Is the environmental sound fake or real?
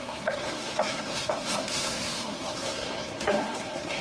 fake